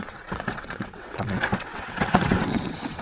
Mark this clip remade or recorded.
remade